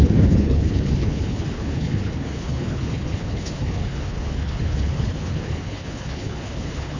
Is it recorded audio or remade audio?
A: remade